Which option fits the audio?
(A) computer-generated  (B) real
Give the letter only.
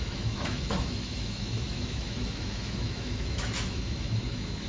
A